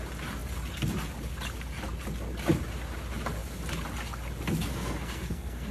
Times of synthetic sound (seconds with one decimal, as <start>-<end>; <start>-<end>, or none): 4.7-5.7